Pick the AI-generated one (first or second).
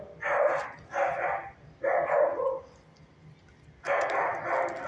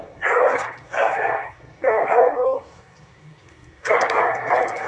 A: second